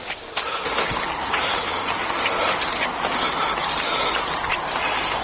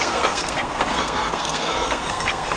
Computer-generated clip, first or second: second